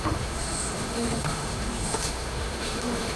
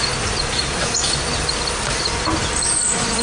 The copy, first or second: first